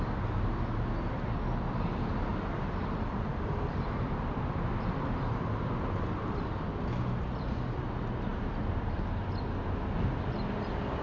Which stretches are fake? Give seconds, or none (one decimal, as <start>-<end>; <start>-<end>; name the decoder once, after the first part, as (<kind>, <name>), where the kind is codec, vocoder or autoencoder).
2.3-4.9 (vocoder, BigVGAN v2); 8.3-9.6